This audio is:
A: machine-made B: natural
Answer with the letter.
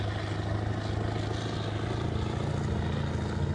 B